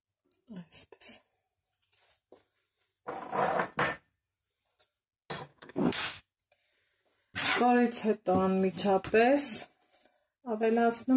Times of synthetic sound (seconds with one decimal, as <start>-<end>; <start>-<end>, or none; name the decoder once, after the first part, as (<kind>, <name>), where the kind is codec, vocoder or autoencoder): 5.5-6.2 (codec, SNAC)